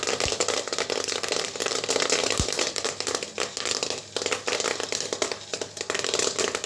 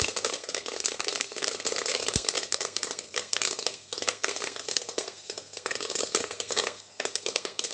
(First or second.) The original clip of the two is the first